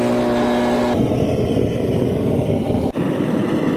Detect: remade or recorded recorded